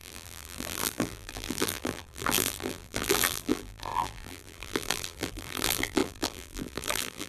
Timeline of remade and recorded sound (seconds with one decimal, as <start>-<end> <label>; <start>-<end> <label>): 0.0-7.3 remade